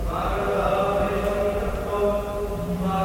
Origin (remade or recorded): remade